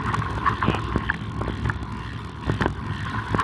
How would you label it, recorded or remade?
recorded